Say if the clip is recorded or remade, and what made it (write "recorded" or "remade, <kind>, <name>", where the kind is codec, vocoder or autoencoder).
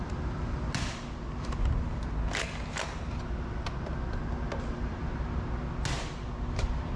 recorded